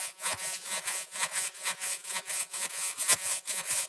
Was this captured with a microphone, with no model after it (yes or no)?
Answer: no